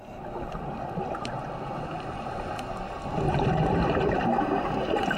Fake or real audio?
real